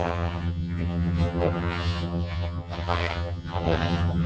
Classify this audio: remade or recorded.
remade